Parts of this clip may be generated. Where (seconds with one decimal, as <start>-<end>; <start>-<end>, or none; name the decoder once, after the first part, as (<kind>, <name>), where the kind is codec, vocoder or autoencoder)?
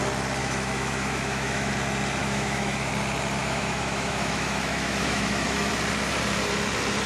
0.4-1.7 (autoencoder, DAC-VAE); 2.2-2.9; 3.4-5.7